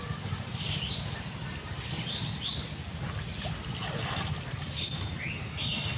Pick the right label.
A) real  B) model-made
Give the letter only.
A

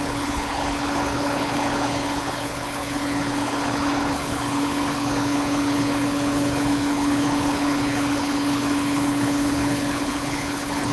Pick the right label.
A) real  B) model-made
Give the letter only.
B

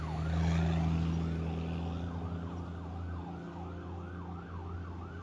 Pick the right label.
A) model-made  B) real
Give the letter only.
B